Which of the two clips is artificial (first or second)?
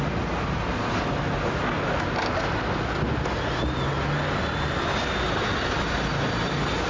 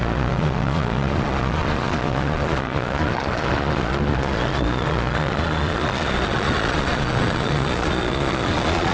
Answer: second